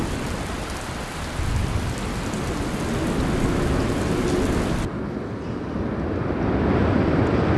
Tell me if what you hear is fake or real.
real